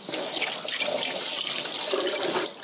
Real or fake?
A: real